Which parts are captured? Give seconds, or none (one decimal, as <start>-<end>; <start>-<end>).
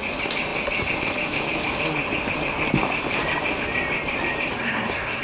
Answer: 0.0-4.6